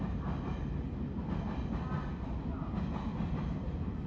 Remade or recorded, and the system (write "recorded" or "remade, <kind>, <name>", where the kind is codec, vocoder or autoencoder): recorded